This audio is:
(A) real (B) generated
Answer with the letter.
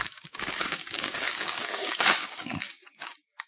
B